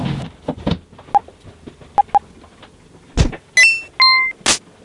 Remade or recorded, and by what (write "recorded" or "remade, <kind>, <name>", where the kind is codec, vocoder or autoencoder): recorded